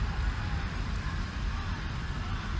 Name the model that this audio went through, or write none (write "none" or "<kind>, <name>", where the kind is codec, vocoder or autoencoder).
vocoder, BigVGAN v2